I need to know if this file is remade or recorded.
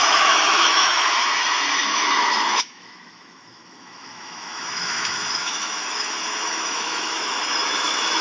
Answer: remade